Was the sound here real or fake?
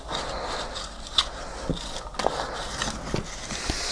real